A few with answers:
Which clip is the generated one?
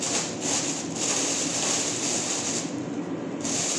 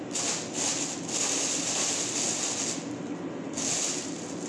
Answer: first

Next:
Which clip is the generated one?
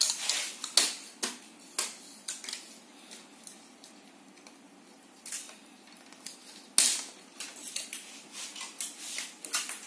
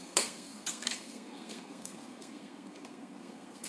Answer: second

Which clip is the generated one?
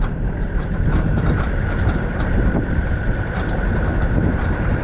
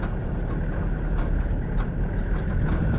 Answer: first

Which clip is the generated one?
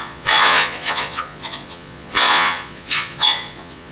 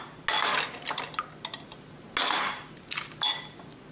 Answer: first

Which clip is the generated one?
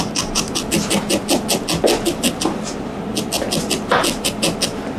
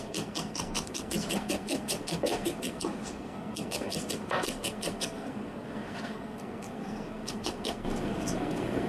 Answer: second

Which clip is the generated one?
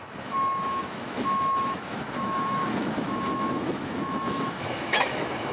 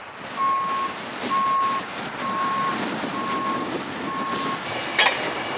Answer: first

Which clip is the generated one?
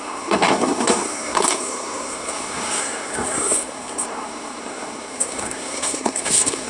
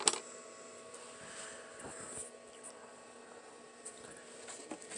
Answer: first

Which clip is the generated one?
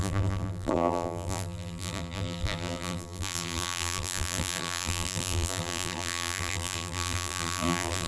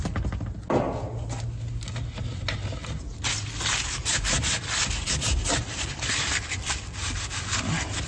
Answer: first